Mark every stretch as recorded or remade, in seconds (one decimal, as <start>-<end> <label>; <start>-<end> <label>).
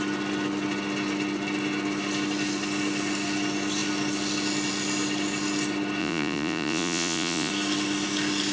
0.0-6.0 recorded; 6.0-7.5 remade; 7.5-8.5 recorded